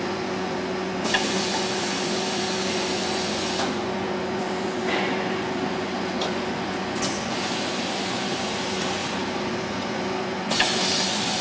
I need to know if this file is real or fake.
fake